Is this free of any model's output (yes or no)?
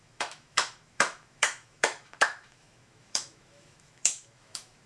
no